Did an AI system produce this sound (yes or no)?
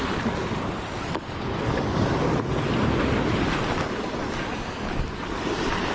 no